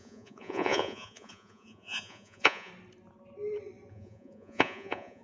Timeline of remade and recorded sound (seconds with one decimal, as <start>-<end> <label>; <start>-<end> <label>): 0.0-2.7 remade; 2.7-3.9 recorded; 3.9-5.2 remade